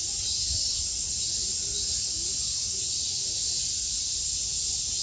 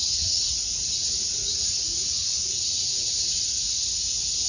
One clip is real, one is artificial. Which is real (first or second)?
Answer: first